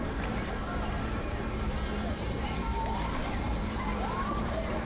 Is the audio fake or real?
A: fake